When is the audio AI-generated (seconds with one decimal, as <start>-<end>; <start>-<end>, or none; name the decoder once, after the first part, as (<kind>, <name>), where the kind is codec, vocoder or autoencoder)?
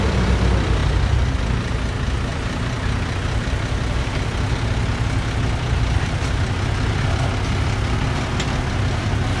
0.8-1.4 (vocoder, BigVGAN v2); 2.3-4.0